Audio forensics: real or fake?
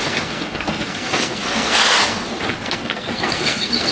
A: fake